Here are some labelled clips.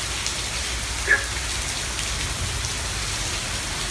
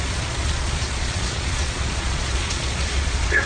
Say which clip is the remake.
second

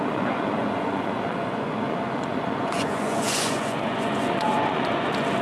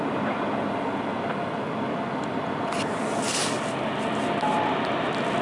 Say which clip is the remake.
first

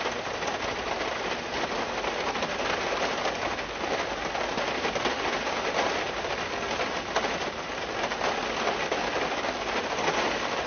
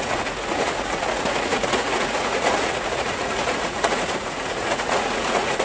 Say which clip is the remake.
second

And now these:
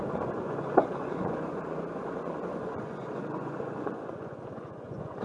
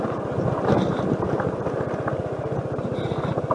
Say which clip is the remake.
first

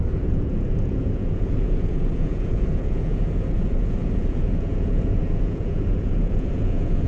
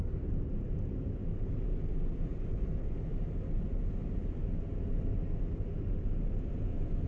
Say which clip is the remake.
first